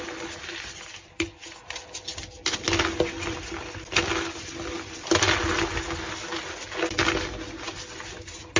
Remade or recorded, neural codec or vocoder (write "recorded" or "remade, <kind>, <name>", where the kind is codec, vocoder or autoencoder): recorded